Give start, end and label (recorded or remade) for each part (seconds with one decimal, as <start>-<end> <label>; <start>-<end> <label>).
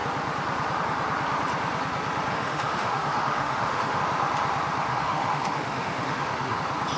0.0-2.3 recorded; 2.3-4.0 remade; 4.0-4.9 recorded; 4.9-6.6 remade; 6.6-7.0 recorded